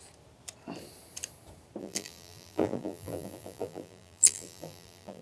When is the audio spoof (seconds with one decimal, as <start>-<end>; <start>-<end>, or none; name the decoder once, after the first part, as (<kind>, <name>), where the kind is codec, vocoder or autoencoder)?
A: 1.8-5.2 (vocoder, BigVGAN v2)